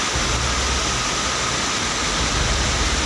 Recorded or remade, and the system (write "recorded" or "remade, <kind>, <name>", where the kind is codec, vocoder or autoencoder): recorded